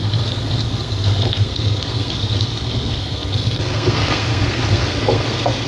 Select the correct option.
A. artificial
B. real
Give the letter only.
A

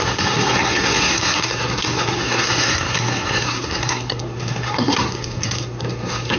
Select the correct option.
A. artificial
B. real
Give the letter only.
A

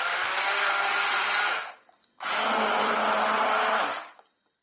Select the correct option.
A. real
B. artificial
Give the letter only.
A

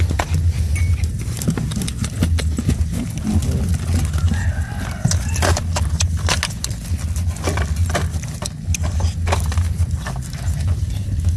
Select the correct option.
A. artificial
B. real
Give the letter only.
B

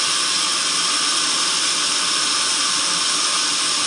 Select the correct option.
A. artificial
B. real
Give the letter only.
B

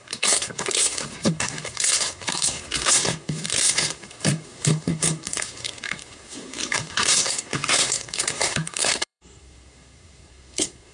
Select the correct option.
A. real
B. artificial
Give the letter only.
B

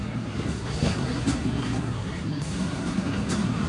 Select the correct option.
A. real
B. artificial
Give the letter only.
B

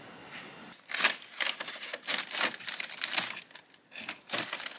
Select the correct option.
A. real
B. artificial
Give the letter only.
A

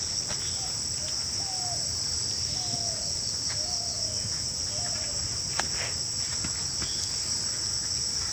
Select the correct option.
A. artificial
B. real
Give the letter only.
B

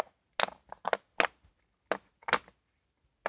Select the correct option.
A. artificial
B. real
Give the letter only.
B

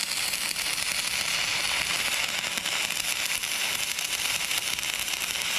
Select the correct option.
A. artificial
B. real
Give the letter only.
B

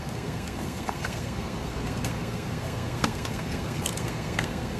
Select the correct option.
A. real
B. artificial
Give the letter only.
B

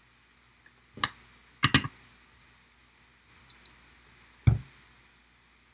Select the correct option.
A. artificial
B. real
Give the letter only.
B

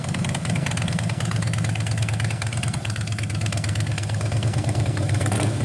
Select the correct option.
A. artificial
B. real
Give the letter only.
A